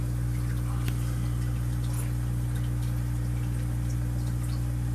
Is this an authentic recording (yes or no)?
yes